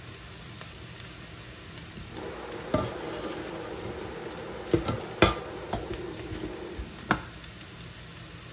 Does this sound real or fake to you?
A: real